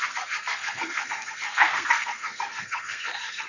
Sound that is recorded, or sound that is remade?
remade